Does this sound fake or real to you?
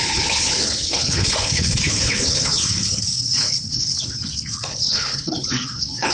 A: fake